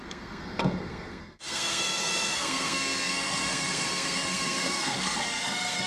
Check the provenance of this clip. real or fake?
fake